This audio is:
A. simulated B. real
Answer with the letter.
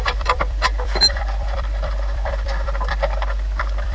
A